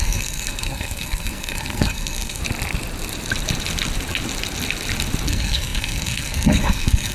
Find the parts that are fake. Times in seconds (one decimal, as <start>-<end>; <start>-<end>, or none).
0.0-2.4; 5.3-7.1